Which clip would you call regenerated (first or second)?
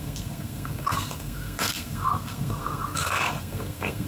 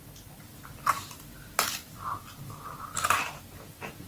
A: first